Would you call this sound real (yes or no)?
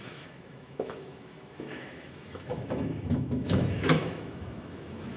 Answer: no